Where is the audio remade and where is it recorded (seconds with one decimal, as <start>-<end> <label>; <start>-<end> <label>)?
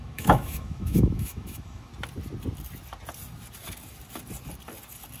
0.0-1.9 remade; 1.9-5.2 recorded